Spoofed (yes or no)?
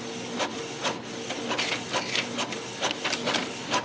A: no